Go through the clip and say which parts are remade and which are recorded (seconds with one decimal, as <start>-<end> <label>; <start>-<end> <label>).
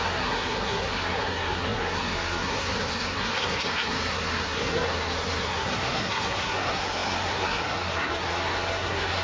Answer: 0.0-9.2 remade